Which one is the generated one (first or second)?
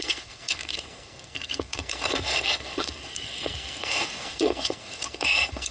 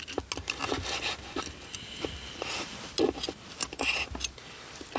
first